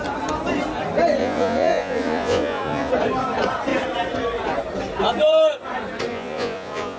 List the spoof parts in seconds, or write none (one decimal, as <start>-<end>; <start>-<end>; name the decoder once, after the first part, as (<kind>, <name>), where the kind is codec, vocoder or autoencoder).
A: 1.2-2.9 (vocoder, Vocos); 6.1-7.0